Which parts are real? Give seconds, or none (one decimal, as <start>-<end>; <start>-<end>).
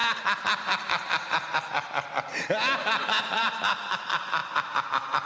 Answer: 0.0-3.2; 4.4-5.3